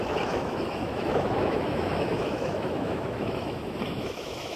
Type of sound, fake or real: fake